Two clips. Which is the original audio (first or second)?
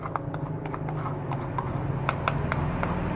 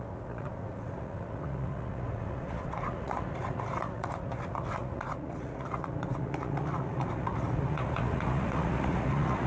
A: first